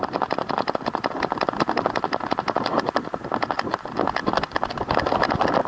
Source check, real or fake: real